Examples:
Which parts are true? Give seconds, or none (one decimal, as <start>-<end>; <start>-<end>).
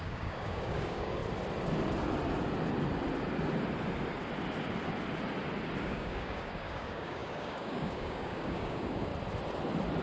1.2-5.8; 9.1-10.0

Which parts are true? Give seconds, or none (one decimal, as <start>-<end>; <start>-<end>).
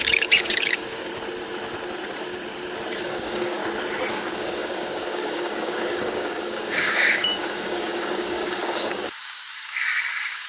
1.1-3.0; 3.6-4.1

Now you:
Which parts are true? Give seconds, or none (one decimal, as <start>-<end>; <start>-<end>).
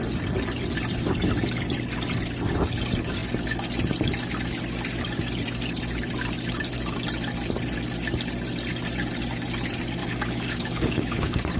0.0-10.0